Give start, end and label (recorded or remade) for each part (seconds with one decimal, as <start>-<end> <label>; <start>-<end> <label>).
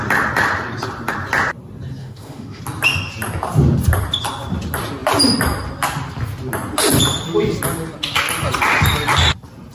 0.0-2.0 recorded; 2.0-2.6 remade; 2.6-9.7 recorded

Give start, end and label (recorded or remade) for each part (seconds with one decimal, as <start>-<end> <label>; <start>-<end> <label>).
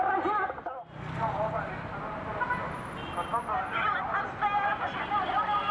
0.0-5.7 recorded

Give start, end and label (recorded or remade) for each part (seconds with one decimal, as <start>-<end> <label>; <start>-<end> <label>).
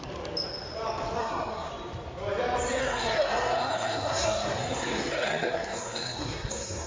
0.0-1.2 recorded; 1.2-1.7 remade; 1.7-2.8 recorded; 2.8-6.9 remade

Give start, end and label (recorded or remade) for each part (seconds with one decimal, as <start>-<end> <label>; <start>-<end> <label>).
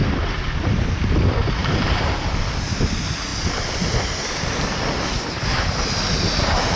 0.0-1.6 recorded; 1.6-2.3 remade; 2.3-6.8 recorded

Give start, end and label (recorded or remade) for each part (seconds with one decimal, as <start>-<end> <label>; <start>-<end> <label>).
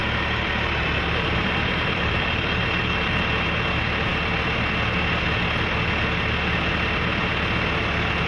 0.0-3.1 remade; 3.1-8.3 recorded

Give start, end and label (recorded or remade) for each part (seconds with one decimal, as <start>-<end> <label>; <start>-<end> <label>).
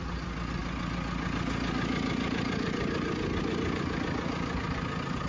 0.0-5.3 recorded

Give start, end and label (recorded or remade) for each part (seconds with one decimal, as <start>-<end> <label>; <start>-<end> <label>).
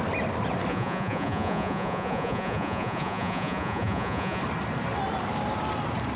0.0-0.7 recorded; 0.7-4.4 remade; 4.4-6.2 recorded